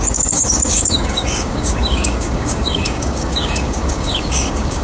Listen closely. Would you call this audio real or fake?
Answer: fake